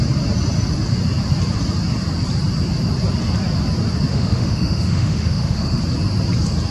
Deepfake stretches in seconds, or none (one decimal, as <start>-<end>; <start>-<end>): 4.1-5.8